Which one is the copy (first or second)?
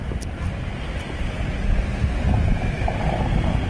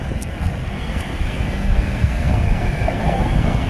second